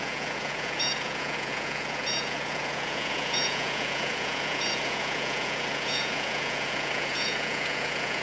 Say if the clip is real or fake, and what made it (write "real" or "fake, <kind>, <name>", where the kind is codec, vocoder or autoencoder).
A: fake, vocoder, Vocos